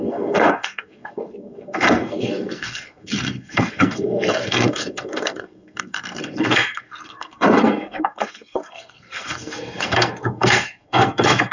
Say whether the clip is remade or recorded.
remade